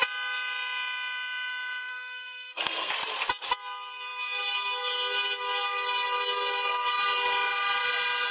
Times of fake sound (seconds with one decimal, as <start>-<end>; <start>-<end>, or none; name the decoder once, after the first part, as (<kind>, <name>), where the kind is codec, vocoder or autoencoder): 1.9-2.9 (codec, SNAC)